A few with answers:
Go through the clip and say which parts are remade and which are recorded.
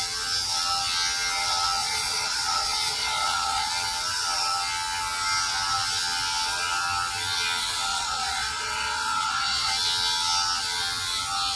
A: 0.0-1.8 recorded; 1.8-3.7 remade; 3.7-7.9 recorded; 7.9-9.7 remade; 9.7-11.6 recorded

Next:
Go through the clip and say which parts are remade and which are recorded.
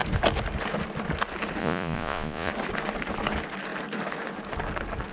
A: 0.0-1.6 recorded; 1.6-2.5 remade; 2.5-5.1 recorded